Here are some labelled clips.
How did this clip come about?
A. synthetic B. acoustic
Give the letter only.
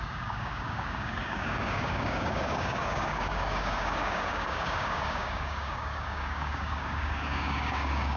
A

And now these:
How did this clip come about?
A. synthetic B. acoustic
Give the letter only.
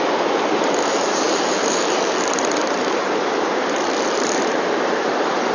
A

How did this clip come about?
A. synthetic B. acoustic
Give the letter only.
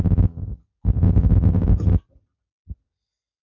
B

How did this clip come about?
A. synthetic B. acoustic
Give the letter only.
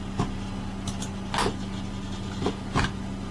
B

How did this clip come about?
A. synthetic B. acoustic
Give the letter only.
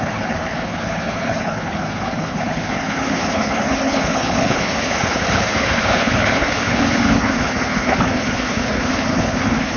A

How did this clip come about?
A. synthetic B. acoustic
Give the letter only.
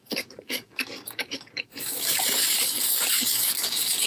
A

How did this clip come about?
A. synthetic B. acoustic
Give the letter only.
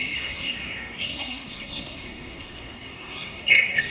A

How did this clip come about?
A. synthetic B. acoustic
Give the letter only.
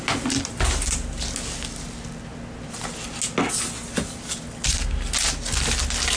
B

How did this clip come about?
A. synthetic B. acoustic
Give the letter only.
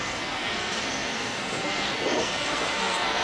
A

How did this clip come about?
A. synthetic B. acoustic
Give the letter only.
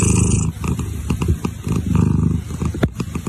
B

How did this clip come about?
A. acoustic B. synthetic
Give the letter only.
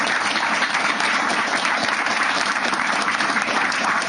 B